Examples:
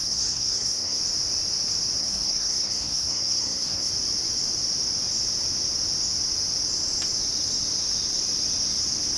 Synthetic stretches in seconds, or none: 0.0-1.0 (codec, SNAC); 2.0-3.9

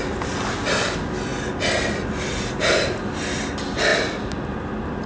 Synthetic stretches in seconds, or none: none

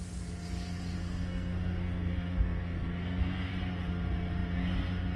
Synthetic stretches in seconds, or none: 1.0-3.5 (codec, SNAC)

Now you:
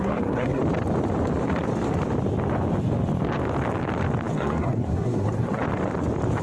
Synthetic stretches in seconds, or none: 0.0-0.6 (codec, SNAC); 4.3-5.6

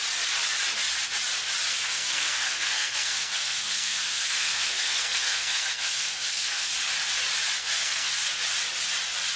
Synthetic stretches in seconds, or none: 1.7-6.7 (codec, SNAC); 7.6-8.1

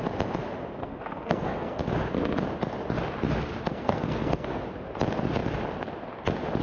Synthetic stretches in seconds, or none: 0.8-1.8 (codec, SNAC); 3.7-4.6